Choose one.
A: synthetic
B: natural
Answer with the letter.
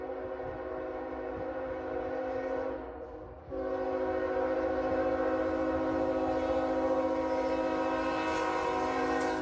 B